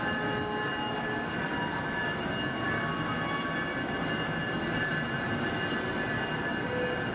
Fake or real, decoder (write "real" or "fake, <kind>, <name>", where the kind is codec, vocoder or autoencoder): real